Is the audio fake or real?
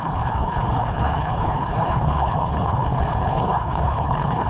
fake